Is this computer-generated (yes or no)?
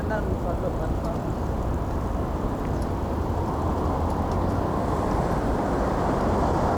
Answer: yes